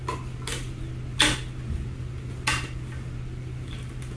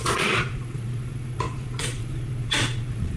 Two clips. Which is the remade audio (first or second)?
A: second